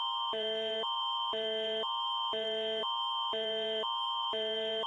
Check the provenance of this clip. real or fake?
fake